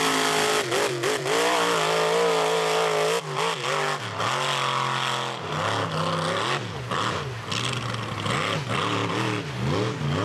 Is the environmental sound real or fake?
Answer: real